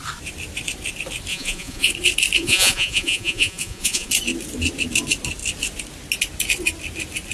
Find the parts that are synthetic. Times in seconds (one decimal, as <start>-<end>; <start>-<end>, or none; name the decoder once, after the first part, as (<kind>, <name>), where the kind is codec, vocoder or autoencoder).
1.3-1.9 (vocoder, Vocos); 2.4-4.1